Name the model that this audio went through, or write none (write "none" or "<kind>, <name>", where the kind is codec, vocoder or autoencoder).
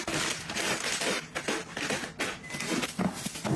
none